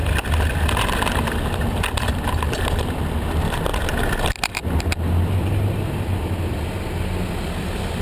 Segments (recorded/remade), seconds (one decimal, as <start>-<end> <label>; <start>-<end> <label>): 0.0-8.0 recorded